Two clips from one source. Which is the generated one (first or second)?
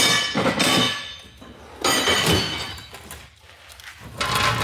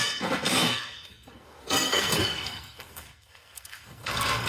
second